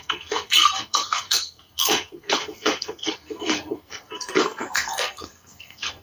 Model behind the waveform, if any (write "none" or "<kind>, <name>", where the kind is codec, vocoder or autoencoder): codec, SNAC